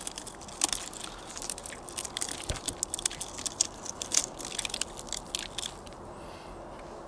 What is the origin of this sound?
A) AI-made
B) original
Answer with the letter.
B